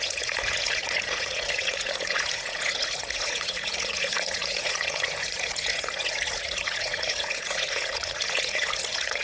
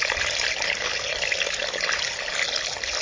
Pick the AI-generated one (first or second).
first